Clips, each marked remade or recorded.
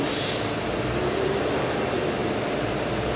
recorded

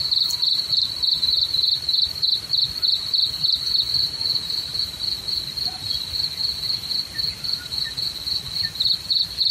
recorded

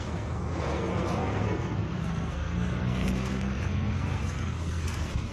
remade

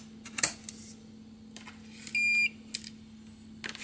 recorded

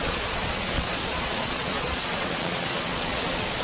remade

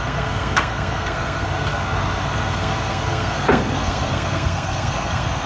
remade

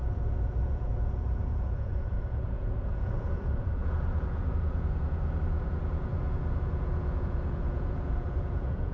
remade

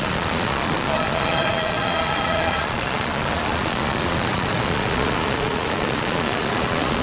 remade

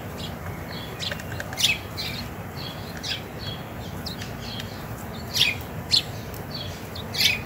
recorded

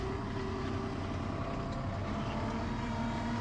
recorded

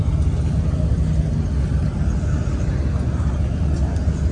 recorded